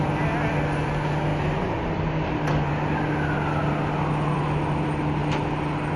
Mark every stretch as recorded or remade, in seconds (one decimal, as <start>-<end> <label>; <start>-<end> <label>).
0.0-6.0 recorded